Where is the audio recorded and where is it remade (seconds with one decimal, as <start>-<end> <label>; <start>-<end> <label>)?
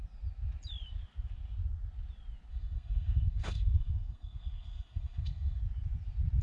0.0-2.5 recorded; 2.5-5.6 remade; 5.6-6.4 recorded